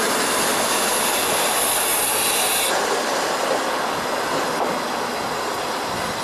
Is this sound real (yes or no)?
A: yes